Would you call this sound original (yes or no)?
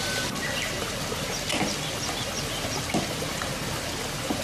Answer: yes